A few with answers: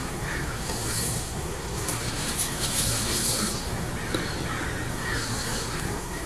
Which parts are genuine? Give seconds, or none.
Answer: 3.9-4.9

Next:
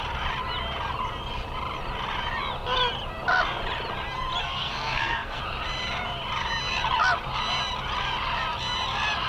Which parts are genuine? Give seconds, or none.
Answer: 0.0-4.4; 5.4-9.3

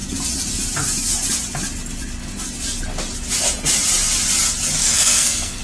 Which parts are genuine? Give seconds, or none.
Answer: 0.0-4.8